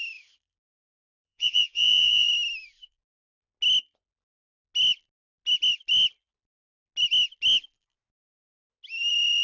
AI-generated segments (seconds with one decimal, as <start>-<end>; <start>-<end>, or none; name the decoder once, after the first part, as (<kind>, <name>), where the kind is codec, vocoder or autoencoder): 0.9-2.3 (vocoder, Vocos)